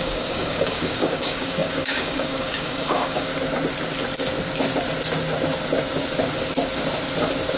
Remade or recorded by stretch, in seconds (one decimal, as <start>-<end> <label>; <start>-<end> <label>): 0.0-3.3 remade; 3.3-7.6 recorded